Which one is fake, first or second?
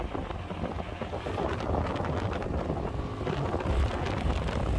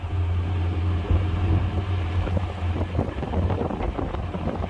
second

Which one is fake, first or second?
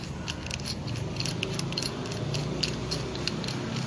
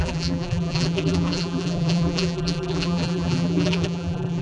second